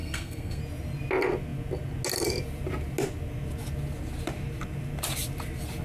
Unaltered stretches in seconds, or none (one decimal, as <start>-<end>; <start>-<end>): 0.6-5.8